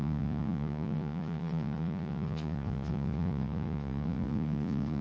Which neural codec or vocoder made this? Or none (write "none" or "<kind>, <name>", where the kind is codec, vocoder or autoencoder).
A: vocoder, Vocos